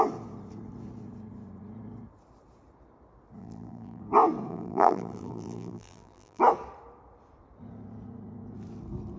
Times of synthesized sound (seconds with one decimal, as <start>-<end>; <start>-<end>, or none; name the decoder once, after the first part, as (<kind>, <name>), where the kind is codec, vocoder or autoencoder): 3.4-4.0 (vocoder, BigVGAN v2); 4.5-6.4